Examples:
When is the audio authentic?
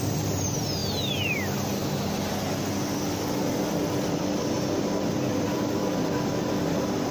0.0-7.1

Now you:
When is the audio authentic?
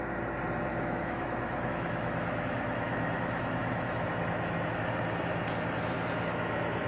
0.0-0.7; 4.8-6.3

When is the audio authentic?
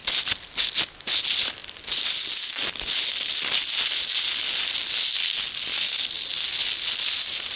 0.0-7.6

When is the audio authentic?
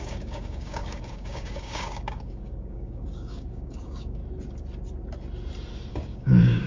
4.2-5.9